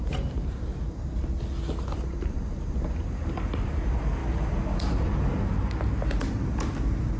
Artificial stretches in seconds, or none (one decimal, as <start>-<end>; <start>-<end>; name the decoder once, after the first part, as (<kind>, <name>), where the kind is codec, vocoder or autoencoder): 0.0-1.0 (vocoder, BigVGAN v2); 2.1-4.2